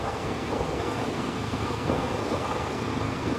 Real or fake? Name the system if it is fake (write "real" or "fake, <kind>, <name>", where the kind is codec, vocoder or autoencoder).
fake, codec, SNAC